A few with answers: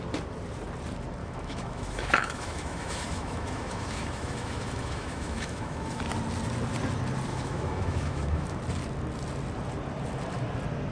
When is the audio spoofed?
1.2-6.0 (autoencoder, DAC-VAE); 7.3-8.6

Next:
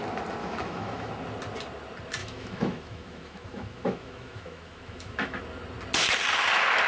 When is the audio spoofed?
0.4-1.1 (autoencoder, DAC-VAE); 2.2-5.4